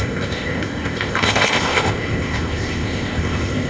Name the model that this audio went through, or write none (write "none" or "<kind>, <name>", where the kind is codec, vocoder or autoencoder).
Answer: codec, ZipCodec